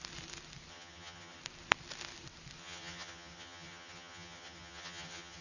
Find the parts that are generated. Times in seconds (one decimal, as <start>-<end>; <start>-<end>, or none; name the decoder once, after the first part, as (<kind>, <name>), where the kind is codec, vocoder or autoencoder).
0.7-1.4 (vocoder, HiFi-GAN); 2.6-5.4